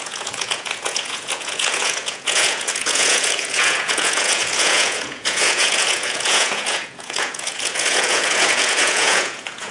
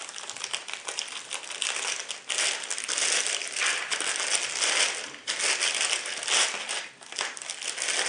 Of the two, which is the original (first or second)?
second